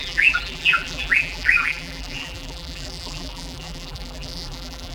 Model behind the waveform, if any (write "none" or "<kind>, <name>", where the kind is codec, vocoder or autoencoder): vocoder, BigVGAN v2